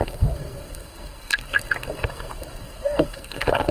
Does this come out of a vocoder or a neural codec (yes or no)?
yes